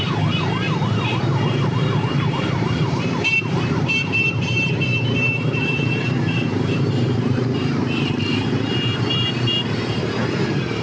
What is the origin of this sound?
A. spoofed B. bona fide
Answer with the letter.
A